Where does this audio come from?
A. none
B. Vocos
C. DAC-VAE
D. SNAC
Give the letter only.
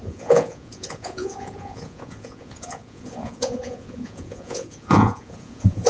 B